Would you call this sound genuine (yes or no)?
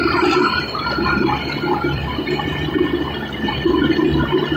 no